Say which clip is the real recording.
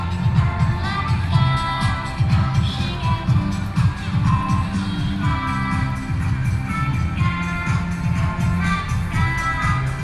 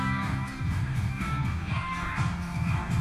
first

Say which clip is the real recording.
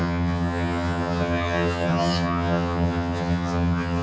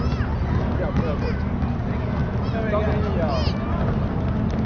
second